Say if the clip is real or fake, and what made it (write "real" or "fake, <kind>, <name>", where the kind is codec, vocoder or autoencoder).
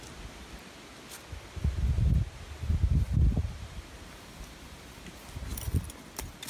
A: real